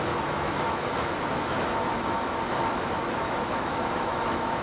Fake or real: fake